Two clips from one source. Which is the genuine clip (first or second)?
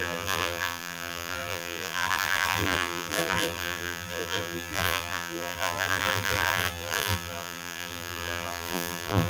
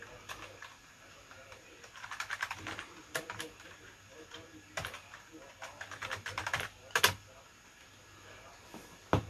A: second